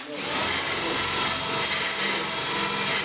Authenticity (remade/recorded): recorded